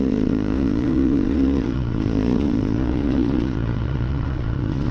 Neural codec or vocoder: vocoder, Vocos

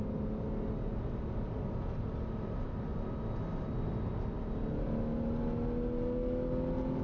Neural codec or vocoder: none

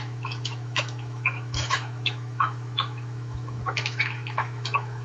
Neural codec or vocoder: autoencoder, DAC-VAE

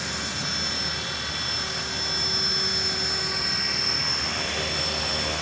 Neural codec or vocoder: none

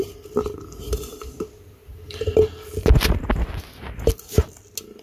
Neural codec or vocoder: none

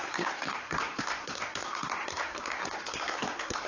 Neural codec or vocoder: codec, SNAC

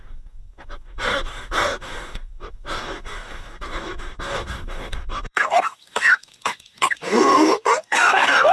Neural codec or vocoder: codec, DAC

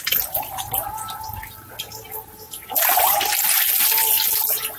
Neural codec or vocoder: none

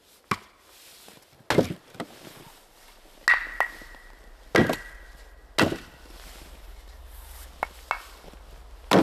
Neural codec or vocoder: none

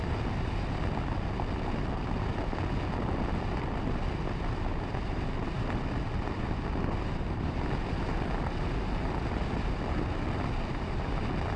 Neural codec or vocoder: none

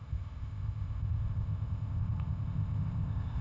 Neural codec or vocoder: codec, ZipCodec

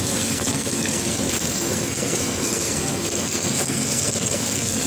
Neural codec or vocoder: codec, SNAC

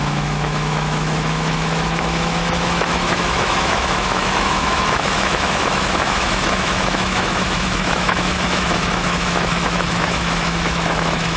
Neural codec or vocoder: autoencoder, DAC-VAE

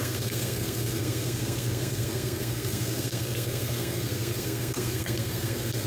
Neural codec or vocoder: codec, SNAC